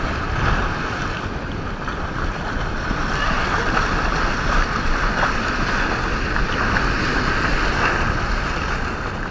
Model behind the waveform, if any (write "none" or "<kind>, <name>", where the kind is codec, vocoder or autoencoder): none